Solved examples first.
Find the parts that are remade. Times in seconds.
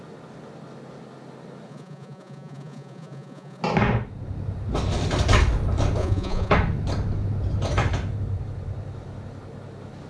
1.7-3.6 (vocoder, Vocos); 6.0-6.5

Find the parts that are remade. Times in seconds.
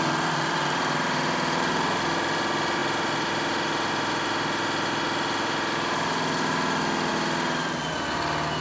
none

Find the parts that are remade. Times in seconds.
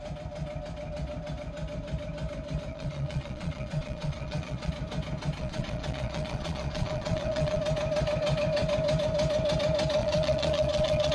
2.7-4.7 (vocoder, Vocos); 5.4-7.6; 10.0-11.1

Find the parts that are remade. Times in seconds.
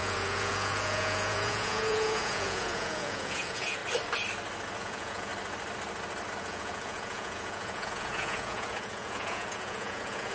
0.0-3.8 (vocoder, Vocos); 4.8-5.3; 6.4-10.3